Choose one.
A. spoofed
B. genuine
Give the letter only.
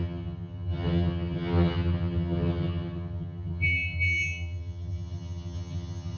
A